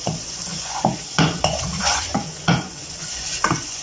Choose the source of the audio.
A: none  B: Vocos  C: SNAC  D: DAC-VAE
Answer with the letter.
B